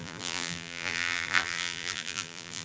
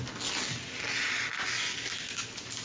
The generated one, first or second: first